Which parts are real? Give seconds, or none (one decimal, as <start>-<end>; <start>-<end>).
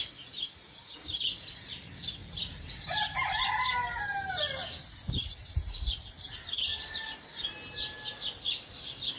0.0-2.2; 3.5-6.7; 7.6-9.2